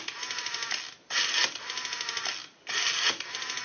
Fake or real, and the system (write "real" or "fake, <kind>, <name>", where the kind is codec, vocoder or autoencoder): real